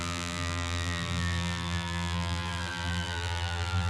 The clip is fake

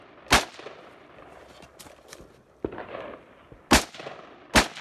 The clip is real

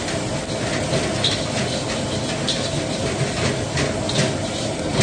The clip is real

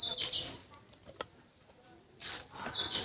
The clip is real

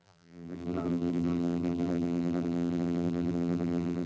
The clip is fake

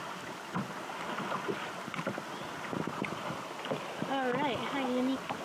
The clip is real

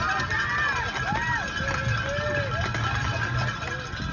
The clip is real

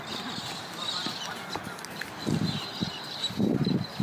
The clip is real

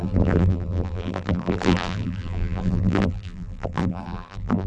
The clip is fake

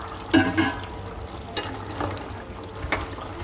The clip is real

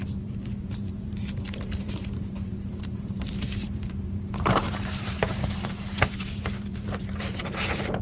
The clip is fake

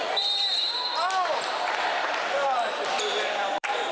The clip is fake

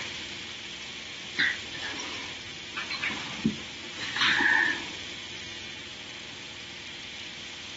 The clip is real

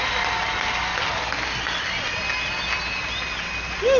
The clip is real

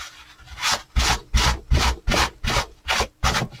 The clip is fake